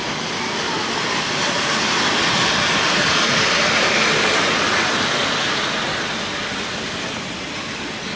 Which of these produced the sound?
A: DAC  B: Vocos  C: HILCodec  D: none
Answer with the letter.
D